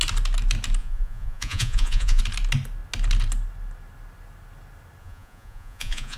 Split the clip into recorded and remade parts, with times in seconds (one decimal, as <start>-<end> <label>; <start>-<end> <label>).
0.0-0.8 recorded; 0.8-2.2 remade; 2.2-5.0 recorded; 5.0-6.2 remade